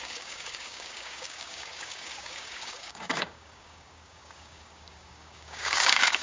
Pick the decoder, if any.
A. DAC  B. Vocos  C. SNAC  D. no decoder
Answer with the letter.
A